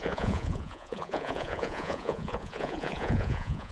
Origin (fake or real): fake